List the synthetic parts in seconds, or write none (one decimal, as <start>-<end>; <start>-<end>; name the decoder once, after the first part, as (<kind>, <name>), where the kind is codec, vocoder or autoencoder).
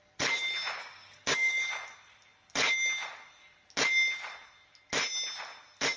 0.8-1.7 (codec, DAC)